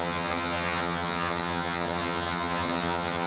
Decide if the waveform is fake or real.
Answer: fake